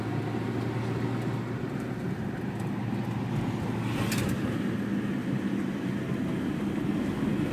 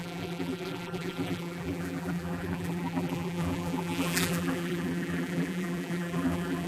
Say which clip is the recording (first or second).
first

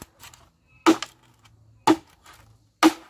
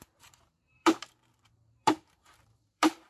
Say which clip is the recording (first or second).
first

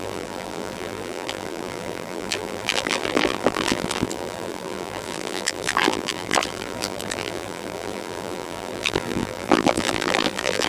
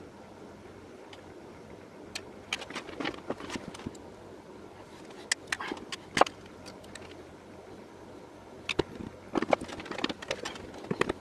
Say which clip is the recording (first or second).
second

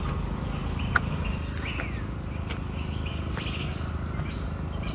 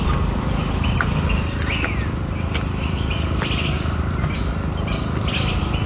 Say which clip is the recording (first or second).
first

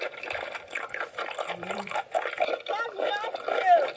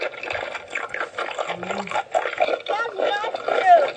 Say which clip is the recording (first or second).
second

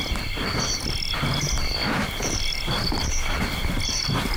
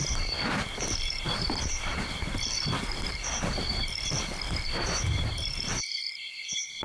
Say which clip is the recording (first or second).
first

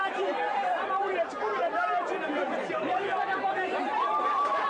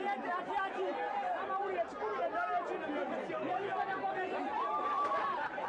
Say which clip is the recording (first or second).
second